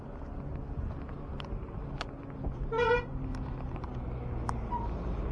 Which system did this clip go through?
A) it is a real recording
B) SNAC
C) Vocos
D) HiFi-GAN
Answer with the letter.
A